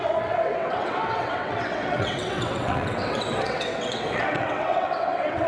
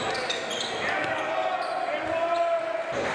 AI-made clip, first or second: first